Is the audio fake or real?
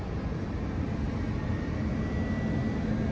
real